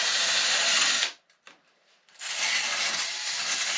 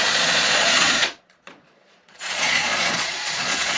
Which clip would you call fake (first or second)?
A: second